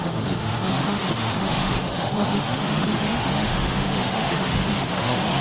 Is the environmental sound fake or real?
fake